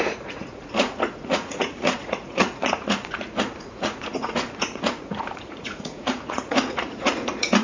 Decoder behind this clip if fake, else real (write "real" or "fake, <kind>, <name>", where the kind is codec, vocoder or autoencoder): fake, vocoder, Vocos